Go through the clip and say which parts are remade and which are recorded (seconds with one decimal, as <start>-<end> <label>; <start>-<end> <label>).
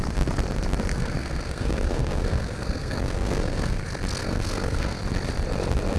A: 0.0-0.9 recorded; 0.9-3.8 remade; 3.8-4.2 recorded; 4.2-5.0 remade; 5.0-6.0 recorded